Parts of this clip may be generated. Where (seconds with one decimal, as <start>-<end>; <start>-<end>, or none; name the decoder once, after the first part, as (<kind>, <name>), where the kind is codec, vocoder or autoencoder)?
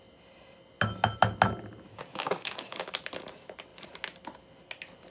1.9-2.9 (codec, DAC)